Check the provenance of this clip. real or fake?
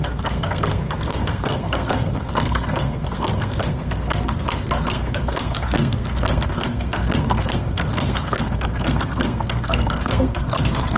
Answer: fake